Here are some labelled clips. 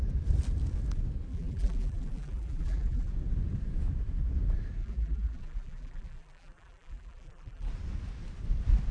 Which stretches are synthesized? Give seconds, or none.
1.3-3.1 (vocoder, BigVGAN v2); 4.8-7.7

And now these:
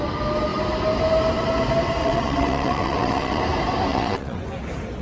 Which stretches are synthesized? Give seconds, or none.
2.0-3.4 (vocoder, WaveNeXt); 3.9-4.4

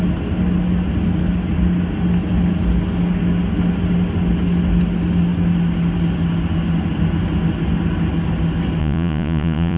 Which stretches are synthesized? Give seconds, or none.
8.8-9.8 (vocoder, Vocos)

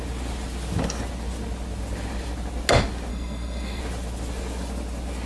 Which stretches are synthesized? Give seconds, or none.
3.1-3.8 (codec, SNAC)

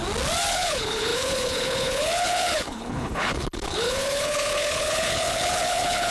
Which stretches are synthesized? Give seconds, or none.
0.5-6.1 (codec, HILCodec)

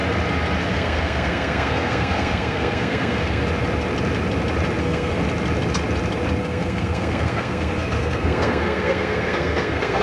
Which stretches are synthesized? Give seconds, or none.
0.7-3.4 (codec, SNAC); 4.8-5.2; 6.4-10.0

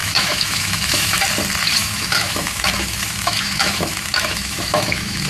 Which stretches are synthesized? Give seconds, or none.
0.0-1.2 (autoencoder, DAC-VAE); 1.8-5.3